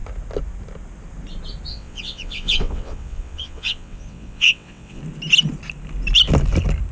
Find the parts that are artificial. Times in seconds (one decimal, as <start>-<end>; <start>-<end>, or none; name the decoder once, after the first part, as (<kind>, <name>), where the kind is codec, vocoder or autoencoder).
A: 1.7-5.0 (vocoder, WaveNeXt)